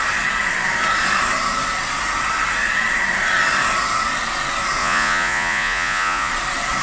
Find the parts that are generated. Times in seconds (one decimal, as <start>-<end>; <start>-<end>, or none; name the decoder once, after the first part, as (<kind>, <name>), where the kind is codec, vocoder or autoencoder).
4.8-6.3 (vocoder, Vocos)